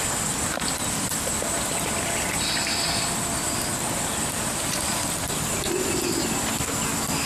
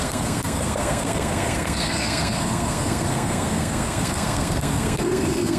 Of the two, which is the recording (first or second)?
first